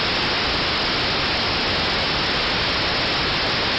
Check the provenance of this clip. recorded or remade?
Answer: recorded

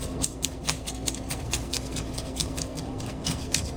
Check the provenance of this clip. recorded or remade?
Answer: remade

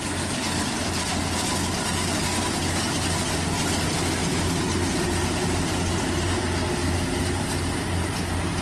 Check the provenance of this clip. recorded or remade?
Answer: recorded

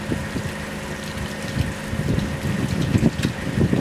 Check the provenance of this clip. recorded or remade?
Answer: recorded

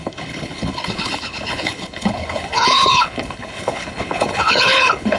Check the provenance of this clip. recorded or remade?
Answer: remade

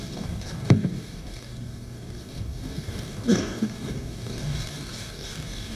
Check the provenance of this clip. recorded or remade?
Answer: remade